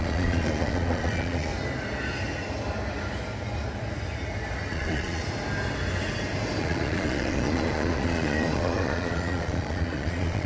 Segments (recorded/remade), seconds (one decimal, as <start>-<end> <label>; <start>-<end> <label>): 0.0-1.5 remade; 1.5-4.7 recorded; 4.7-5.2 remade; 5.2-6.6 recorded; 6.6-10.5 remade